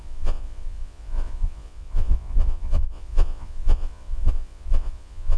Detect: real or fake fake